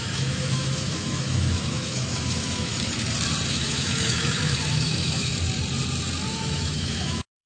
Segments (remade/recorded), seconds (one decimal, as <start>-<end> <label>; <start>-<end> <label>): 0.0-2.7 remade; 2.7-3.5 recorded; 3.5-5.3 remade; 5.3-6.3 recorded; 6.3-7.5 remade